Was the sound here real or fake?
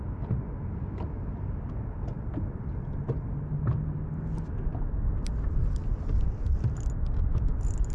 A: real